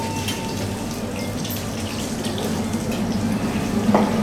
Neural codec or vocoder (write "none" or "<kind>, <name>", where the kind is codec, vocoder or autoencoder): none